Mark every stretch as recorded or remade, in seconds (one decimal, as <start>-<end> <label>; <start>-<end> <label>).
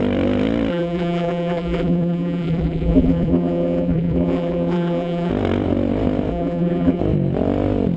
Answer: 0.0-0.7 recorded; 0.7-5.3 remade; 5.3-6.3 recorded; 6.3-7.0 remade; 7.0-8.0 recorded